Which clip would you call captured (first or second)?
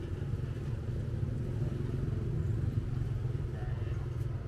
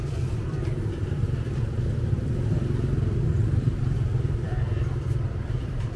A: first